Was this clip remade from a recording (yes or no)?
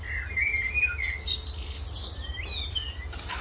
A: no